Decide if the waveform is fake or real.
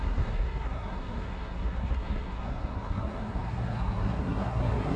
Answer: fake